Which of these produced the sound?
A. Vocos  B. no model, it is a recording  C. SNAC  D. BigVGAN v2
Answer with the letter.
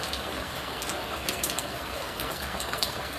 C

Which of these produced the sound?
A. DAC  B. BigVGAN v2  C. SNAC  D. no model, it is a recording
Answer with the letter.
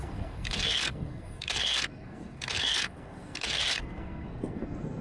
C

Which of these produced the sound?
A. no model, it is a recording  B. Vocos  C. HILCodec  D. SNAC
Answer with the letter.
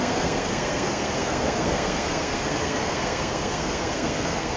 D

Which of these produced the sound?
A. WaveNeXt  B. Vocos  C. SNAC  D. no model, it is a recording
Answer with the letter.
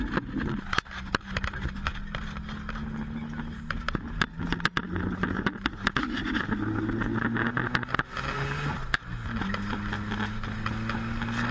D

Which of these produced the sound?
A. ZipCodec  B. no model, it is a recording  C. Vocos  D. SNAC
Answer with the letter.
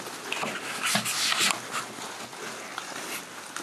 B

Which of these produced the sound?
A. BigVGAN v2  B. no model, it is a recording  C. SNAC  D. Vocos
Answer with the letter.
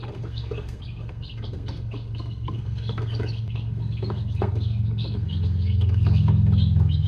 C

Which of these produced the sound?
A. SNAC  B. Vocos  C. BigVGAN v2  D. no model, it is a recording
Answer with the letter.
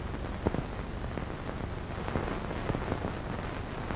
D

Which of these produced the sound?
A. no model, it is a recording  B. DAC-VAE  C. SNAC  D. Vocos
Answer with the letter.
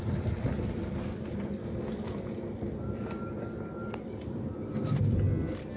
A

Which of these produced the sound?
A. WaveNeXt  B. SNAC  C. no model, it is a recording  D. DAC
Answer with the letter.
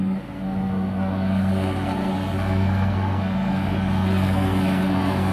B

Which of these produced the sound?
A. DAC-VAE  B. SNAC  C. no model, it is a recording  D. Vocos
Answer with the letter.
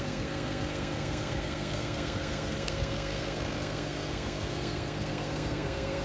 B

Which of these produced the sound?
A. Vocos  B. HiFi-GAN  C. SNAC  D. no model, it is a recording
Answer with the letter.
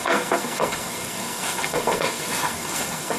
C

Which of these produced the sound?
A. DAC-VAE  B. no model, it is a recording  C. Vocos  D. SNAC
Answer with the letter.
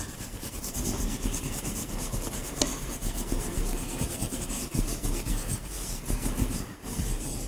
D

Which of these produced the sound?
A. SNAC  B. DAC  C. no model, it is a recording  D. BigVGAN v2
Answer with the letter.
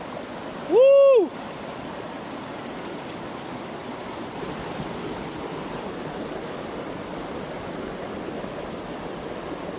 C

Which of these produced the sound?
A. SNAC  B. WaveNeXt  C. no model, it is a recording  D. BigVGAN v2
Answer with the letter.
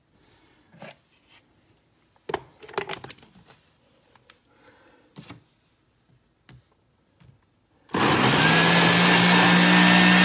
C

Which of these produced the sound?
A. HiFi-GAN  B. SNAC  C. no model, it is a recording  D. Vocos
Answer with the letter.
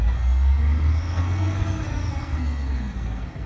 B